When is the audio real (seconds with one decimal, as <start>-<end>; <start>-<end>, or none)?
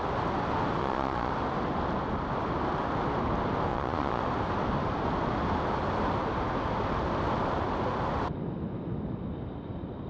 0.0-0.8; 1.3-3.7; 4.2-10.1